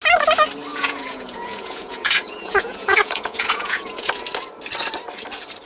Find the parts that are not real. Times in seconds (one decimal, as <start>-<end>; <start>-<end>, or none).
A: 0.7-4.1